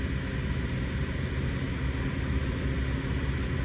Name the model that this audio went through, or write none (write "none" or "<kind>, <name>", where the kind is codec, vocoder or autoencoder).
none